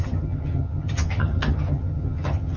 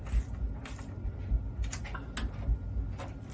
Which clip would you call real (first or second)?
second